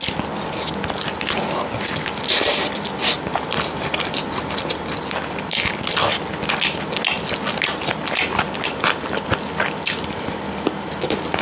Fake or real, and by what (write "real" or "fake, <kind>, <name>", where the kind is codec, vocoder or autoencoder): real